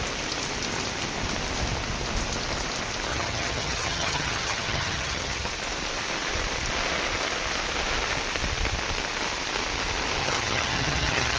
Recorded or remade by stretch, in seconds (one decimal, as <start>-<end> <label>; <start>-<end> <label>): 0.0-3.1 recorded; 3.1-5.5 remade; 5.5-10.2 recorded; 10.2-11.4 remade